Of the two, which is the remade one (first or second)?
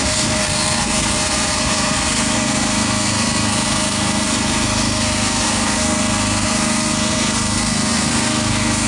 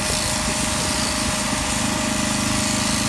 first